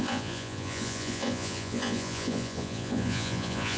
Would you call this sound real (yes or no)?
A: no